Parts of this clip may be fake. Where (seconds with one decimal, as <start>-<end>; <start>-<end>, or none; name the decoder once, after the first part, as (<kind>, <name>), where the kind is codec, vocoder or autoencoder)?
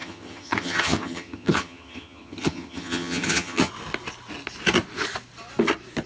0.0-3.7 (vocoder, HiFi-GAN)